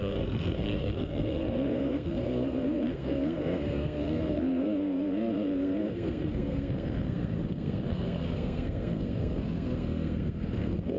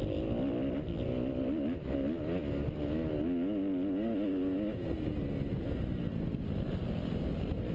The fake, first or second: first